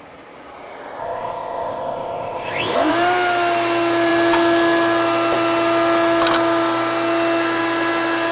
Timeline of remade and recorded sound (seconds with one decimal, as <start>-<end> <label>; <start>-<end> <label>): 0.0-1.0 recorded; 1.0-2.9 remade; 2.9-8.3 recorded